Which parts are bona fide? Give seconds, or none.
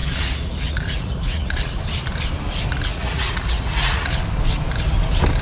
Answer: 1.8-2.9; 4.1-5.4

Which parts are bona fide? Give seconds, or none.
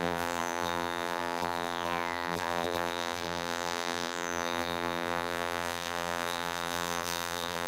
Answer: none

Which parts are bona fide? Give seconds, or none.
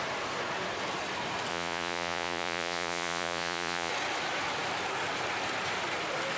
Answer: 0.0-1.5; 3.9-6.4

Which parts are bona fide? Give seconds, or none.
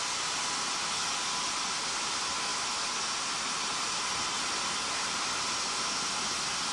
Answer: 0.0-6.7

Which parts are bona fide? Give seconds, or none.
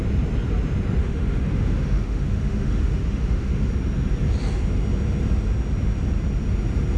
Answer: 0.0-1.0; 3.7-7.0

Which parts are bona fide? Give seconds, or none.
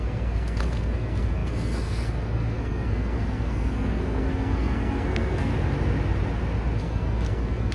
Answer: 5.5-6.8